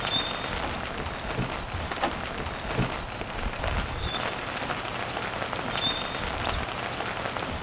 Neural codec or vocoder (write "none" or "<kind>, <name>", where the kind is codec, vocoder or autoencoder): none